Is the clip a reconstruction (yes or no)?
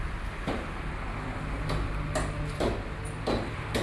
no